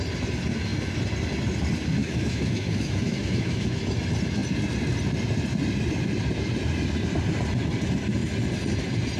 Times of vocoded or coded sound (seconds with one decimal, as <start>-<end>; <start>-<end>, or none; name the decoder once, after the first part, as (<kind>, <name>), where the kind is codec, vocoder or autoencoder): 2.0-3.8 (autoencoder, DAC-VAE)